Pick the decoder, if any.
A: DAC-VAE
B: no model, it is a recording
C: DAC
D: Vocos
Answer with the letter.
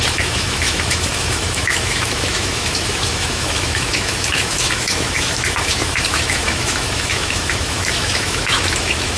A